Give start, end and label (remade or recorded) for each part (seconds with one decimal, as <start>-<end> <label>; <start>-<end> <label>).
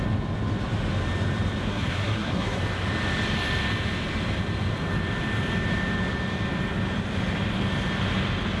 0.0-1.7 recorded; 1.7-2.6 remade; 2.6-8.6 recorded